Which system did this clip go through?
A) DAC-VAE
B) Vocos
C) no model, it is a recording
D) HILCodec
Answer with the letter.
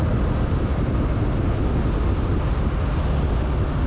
C